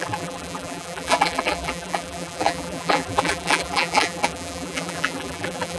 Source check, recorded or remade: remade